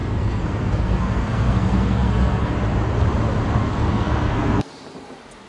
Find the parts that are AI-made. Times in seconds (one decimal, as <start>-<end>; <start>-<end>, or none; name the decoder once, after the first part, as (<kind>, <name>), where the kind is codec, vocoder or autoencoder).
0.0-2.5 (codec, SNAC); 3.6-4.7